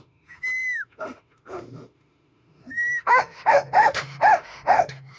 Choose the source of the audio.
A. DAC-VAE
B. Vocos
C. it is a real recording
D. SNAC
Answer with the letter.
A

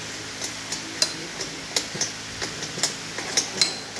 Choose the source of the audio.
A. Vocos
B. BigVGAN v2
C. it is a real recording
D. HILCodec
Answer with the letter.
C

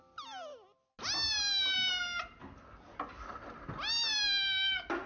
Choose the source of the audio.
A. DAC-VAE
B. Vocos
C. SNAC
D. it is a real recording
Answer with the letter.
D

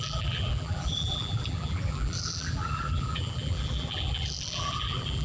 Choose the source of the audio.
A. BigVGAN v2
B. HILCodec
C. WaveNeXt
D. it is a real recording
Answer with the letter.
A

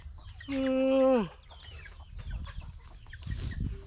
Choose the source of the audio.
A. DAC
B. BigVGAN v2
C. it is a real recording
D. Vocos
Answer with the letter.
C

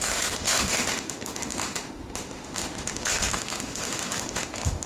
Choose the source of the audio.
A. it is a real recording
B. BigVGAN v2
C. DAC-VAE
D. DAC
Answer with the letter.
C